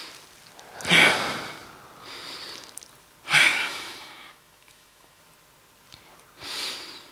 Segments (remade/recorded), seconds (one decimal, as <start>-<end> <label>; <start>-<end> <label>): 0.0-3.5 recorded; 3.5-5.2 remade; 5.2-7.1 recorded